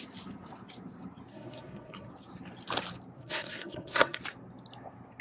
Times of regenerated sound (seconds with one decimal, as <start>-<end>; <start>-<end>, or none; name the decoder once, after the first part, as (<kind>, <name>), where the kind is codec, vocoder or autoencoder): 1.3-2.1 (codec, SNAC); 3.2-4.2